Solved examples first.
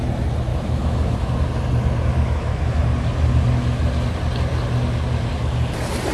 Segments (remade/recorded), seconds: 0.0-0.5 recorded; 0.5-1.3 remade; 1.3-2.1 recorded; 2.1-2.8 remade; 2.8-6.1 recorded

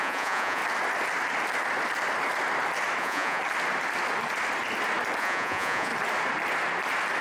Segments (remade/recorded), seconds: 0.0-0.6 remade; 0.6-3.0 recorded; 3.0-3.4 remade; 3.4-5.2 recorded; 5.2-5.9 remade; 5.9-7.2 recorded

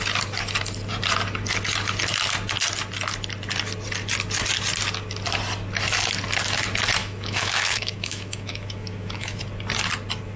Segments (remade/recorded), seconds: 0.0-7.0 recorded; 7.0-9.4 remade; 9.4-10.4 recorded

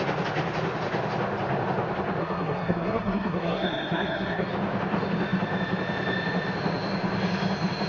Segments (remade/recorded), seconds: 0.0-2.2 recorded; 2.2-4.5 remade; 4.5-7.9 recorded

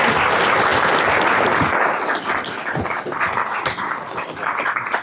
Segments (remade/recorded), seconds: 0.0-5.0 recorded